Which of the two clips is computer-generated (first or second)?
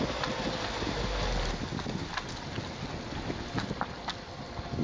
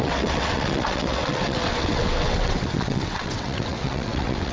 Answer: second